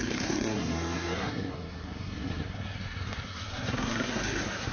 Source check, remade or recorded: remade